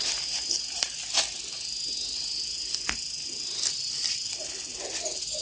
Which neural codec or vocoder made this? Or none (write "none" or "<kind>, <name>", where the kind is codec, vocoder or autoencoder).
none